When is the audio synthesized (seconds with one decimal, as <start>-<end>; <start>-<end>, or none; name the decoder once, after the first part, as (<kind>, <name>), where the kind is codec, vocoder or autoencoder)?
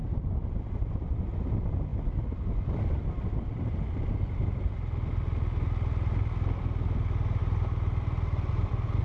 none